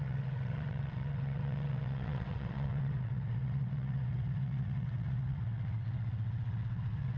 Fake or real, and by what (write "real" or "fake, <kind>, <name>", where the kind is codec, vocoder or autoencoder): fake, vocoder, WaveNeXt